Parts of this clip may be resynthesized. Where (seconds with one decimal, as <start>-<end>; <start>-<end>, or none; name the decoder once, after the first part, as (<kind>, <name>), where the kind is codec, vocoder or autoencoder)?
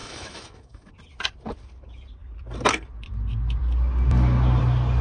0.0-0.9 (autoencoder, DAC-VAE)